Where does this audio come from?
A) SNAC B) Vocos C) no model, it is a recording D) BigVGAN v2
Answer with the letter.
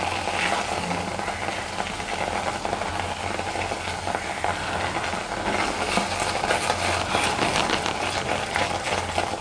C